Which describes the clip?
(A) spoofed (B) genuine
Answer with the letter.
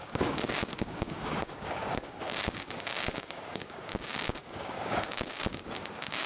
A